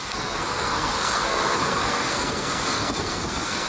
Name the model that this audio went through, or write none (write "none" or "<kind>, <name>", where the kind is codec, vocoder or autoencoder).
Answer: codec, SNAC